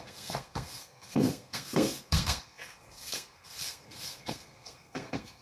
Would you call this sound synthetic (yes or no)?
yes